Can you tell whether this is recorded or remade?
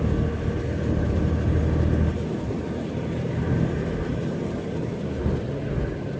recorded